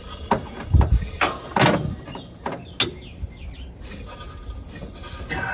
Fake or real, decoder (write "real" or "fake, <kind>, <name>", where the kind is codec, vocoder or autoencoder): real